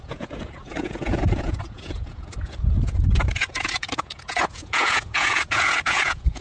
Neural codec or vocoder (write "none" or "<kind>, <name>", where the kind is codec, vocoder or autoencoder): vocoder, Vocos